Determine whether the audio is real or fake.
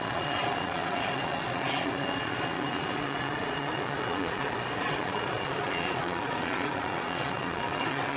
fake